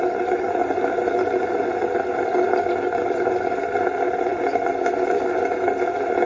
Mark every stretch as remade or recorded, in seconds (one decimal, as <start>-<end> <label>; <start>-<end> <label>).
0.0-6.3 recorded